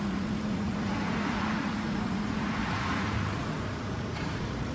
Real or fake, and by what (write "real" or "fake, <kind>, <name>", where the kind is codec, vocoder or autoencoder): fake, vocoder, Vocos